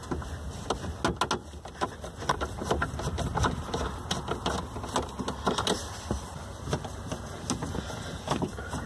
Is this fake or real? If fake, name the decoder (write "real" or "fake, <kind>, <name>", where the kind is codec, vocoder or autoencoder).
real